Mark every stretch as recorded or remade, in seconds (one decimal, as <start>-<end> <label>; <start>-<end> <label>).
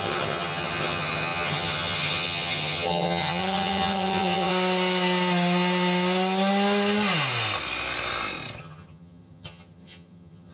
0.0-4.5 remade; 4.5-8.6 recorded; 8.6-10.5 remade